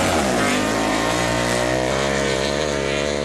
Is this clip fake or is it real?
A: real